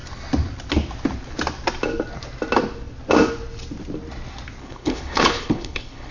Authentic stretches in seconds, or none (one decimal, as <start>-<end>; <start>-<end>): 0.0-4.6